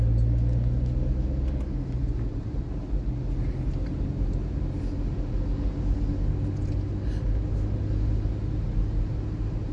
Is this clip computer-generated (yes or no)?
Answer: no